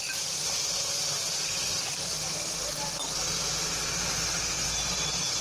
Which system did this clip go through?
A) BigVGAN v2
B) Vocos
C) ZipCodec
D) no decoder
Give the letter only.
A